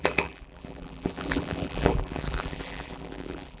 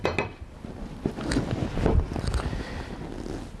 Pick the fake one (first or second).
first